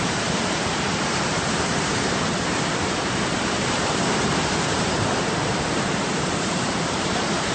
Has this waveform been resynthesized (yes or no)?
yes